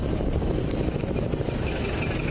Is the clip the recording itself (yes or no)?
yes